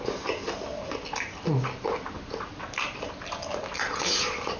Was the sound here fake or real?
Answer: real